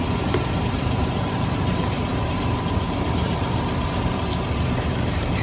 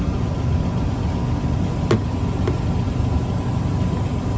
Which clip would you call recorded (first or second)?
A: second